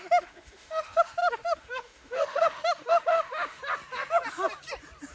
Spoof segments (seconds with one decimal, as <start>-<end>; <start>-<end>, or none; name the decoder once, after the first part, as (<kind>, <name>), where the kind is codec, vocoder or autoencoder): 0.0-3.6 (autoencoder, DAC-VAE)

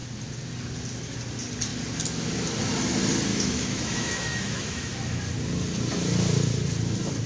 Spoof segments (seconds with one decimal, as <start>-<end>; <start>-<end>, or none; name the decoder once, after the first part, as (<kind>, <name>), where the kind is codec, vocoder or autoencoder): 3.3-5.2 (autoencoder, DAC-VAE)